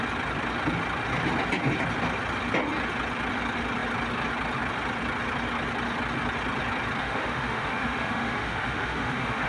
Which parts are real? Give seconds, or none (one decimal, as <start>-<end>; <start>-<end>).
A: 0.0-7.0